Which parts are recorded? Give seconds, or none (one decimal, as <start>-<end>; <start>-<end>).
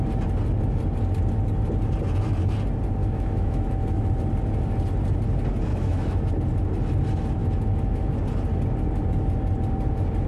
0.0-3.0; 4.1-5.7; 6.3-7.4; 8.2-10.3